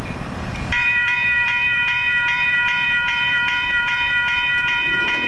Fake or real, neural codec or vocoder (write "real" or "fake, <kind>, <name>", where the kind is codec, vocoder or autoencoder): fake, vocoder, BigVGAN v2